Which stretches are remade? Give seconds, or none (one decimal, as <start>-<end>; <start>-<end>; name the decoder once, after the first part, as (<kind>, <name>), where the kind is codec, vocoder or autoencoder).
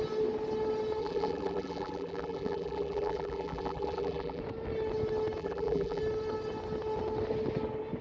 1.0-4.4 (vocoder, BigVGAN v2); 5.4-6.0